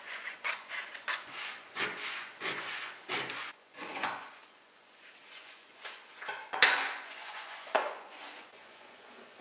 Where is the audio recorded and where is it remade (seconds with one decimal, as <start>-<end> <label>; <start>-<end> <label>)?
0.0-9.4 remade